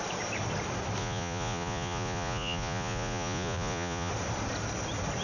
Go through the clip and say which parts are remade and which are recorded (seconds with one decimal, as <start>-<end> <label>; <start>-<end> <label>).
0.0-1.0 recorded; 1.0-4.1 remade; 4.1-5.2 recorded